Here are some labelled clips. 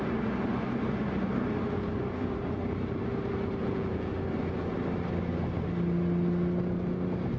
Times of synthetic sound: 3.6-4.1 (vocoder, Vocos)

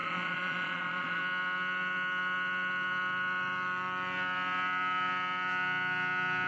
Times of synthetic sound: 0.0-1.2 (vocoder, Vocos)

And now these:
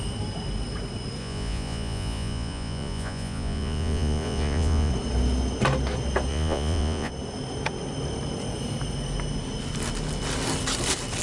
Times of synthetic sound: 1.2-4.9 (vocoder, Vocos); 6.3-7.1